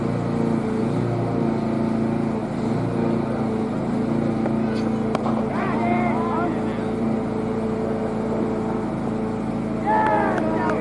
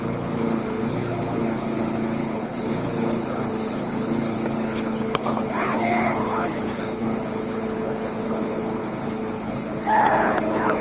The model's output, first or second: second